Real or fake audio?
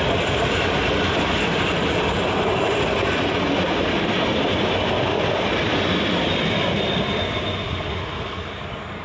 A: real